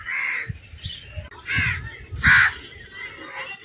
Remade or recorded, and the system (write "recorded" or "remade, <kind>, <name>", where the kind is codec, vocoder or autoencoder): recorded